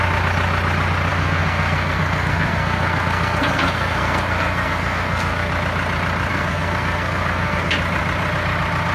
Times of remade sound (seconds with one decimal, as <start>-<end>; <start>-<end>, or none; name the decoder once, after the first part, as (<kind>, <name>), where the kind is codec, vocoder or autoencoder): 1.1-5.5 (codec, SNAC); 6.3-7.7